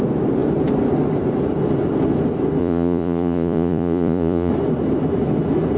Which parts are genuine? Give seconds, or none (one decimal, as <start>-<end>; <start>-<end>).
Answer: 0.0-2.6; 4.5-5.8